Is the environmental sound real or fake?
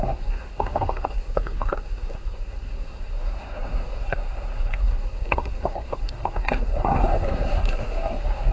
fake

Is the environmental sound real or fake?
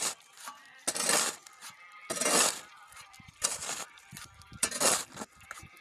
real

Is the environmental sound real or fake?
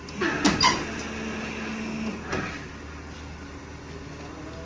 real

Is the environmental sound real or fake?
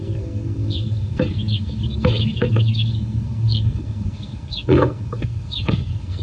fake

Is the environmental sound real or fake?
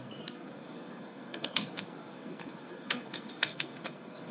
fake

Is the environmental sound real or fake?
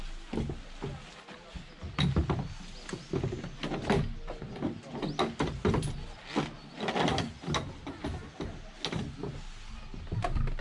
real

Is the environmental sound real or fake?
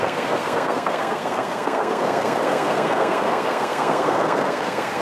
fake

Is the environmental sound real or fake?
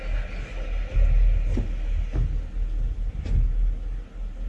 real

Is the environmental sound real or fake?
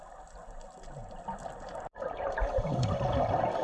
real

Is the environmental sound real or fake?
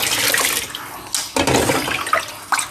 real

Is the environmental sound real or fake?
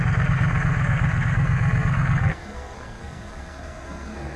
fake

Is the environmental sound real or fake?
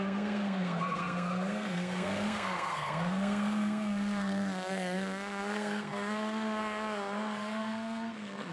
fake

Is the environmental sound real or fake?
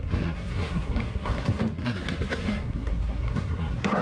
fake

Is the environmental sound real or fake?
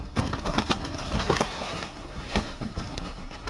fake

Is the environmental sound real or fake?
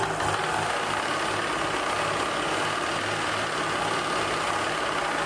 real